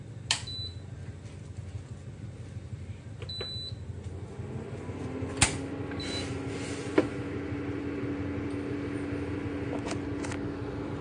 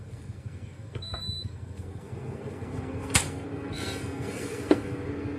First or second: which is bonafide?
first